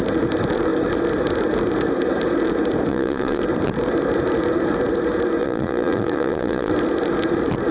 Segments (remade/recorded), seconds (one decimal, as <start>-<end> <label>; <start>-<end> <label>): 0.0-2.9 recorded; 2.9-3.4 remade; 3.4-5.4 recorded; 5.4-6.7 remade; 6.7-7.7 recorded